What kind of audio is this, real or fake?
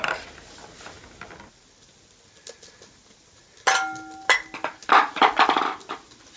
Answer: real